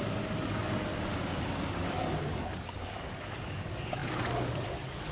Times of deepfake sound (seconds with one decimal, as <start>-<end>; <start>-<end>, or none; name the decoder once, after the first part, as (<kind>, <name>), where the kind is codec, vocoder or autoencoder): 0.0-5.1 (codec, DAC)